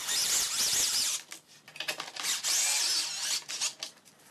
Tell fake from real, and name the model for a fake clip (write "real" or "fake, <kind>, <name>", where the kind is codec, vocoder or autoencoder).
real